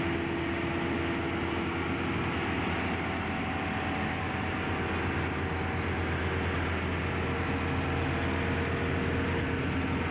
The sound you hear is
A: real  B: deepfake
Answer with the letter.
A